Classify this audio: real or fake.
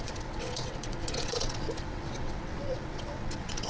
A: fake